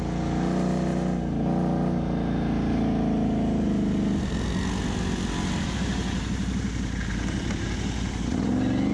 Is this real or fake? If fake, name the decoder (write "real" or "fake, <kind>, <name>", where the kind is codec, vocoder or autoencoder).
real